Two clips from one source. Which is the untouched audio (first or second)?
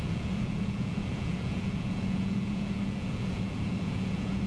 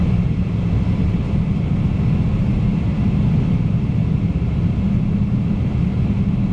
second